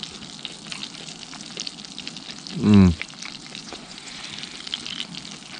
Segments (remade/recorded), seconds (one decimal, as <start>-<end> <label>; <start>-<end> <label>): 0.0-3.6 recorded; 3.6-4.2 remade; 4.2-5.6 recorded